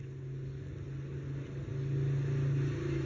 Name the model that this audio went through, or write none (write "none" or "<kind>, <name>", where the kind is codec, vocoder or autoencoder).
none